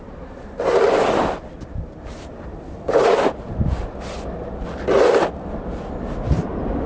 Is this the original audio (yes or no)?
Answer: yes